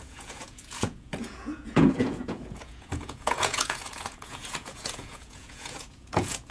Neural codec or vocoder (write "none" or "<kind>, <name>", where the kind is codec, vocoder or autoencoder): vocoder, Vocos